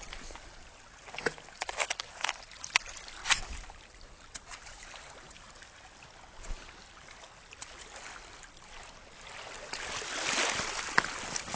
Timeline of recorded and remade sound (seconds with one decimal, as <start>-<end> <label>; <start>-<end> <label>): 0.0-3.2 recorded; 3.2-5.6 remade; 5.6-11.6 recorded